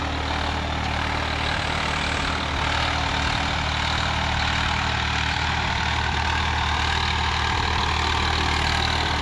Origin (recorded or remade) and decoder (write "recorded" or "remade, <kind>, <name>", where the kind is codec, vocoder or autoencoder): recorded